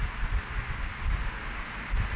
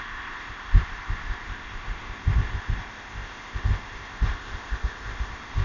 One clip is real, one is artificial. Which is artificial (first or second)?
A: second